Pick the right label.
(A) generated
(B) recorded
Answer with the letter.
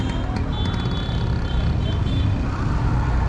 B